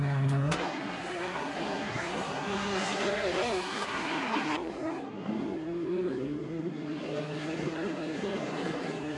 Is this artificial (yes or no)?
yes